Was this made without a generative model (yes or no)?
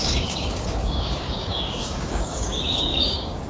no